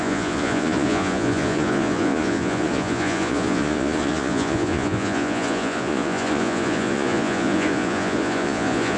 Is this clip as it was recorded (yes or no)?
no